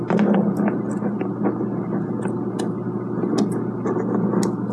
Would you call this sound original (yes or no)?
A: yes